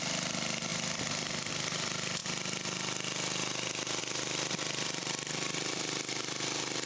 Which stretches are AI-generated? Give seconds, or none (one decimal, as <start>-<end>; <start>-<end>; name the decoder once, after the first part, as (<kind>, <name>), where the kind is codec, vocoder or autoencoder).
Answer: none